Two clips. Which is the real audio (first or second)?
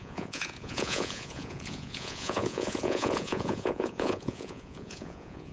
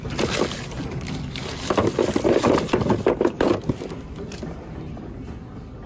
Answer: second